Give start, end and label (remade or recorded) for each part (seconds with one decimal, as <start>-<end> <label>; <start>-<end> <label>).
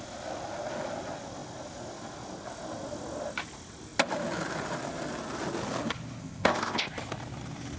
0.0-6.2 recorded; 6.2-6.9 remade; 6.9-7.8 recorded